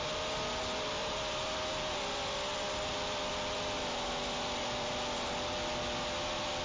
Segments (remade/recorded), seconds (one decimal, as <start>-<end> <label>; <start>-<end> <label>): 0.0-1.0 recorded; 1.0-5.0 remade; 5.0-6.6 recorded